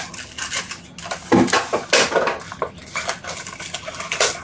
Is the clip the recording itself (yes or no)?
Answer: yes